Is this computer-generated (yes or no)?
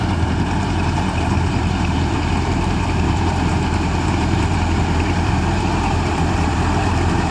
yes